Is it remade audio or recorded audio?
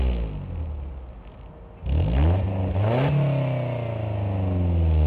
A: recorded